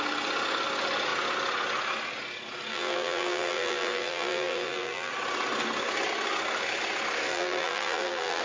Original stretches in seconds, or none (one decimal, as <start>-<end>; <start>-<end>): 0.0-2.7; 5.1-7.3